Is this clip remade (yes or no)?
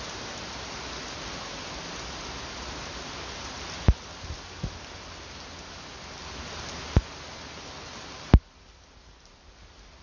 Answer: no